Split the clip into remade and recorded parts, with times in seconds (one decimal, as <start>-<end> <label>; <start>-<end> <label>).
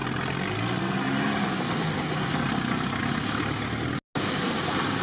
0.0-5.0 recorded